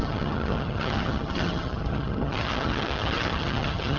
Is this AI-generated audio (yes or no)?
yes